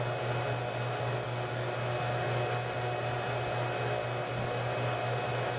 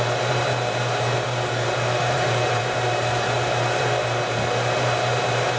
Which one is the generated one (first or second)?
second